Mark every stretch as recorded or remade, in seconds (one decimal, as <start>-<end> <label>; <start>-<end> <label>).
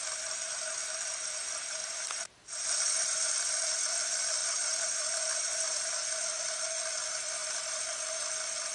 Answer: 0.0-1.8 recorded; 1.8-3.3 remade; 3.3-4.4 recorded; 4.4-5.8 remade; 5.8-8.7 recorded